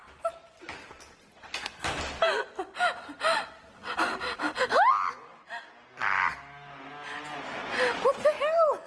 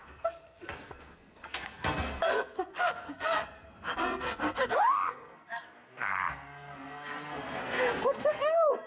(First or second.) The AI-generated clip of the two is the second